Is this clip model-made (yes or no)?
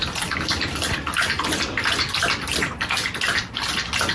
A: no